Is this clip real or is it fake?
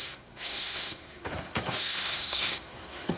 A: fake